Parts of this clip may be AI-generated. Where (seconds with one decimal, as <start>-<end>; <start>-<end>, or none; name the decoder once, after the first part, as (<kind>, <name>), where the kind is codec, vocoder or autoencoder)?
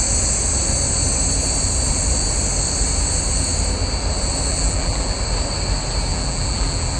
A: 4.5-5.1 (vocoder, BigVGAN v2); 6.1-7.0